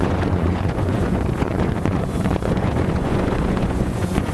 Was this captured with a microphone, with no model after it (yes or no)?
no